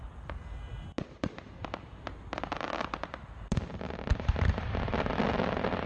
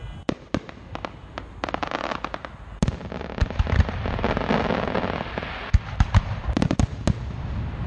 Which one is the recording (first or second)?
second